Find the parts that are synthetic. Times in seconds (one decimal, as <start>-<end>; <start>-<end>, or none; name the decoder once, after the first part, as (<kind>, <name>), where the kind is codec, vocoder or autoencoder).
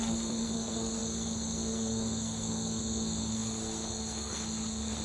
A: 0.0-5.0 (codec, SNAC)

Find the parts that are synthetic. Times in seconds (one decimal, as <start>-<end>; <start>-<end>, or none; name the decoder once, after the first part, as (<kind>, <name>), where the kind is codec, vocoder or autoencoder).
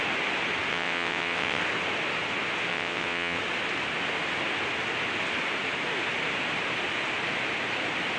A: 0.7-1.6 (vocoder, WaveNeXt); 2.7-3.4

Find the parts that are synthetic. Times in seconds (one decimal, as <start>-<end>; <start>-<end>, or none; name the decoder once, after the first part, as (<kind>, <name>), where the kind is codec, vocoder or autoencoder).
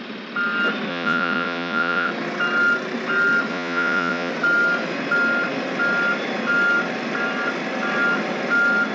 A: 0.9-2.1 (vocoder, Vocos); 3.5-4.3